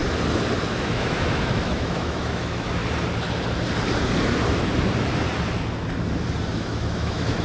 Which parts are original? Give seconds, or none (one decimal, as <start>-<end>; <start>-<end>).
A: 0.0-0.7; 2.8-6.5